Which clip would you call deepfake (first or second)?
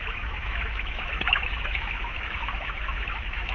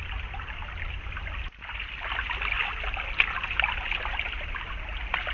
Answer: first